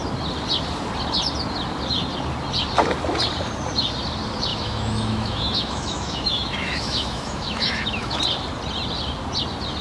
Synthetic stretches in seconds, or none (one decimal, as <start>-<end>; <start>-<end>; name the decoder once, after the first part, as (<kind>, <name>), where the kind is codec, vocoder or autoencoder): 4.5-8.2 (autoencoder, DAC-VAE)